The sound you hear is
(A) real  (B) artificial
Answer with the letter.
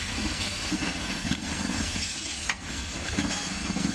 B